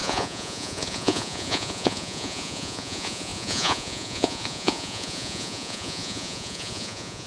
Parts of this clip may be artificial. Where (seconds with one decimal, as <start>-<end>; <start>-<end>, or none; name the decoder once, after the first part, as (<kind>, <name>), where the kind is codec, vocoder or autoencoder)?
0.0-7.3 (vocoder, Vocos)